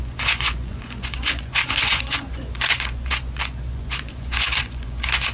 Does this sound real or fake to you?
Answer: fake